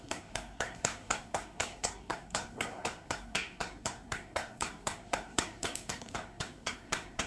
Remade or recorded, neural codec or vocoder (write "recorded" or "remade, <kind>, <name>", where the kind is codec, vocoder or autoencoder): remade, codec, SNAC